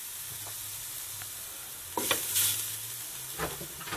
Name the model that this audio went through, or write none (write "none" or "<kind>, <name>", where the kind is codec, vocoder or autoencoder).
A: none